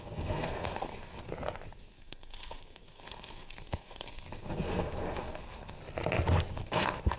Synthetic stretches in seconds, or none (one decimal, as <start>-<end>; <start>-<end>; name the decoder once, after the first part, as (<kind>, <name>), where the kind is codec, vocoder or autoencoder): 0.0-1.3 (codec, SNAC); 1.8-5.8; 6.5-7.2